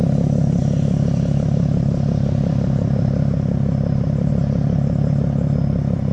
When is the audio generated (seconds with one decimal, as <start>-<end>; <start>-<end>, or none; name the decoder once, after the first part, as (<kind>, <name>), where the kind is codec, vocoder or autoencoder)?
0.6-4.3 (vocoder, BigVGAN v2)